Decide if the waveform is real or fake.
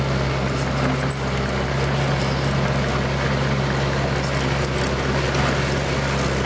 real